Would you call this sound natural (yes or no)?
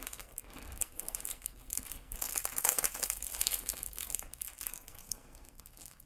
no